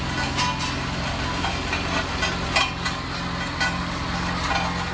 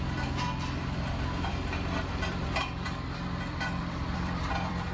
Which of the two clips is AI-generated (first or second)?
second